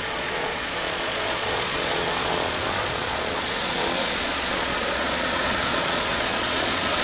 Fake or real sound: fake